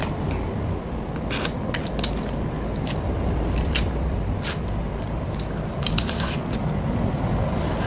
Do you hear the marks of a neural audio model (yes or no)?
no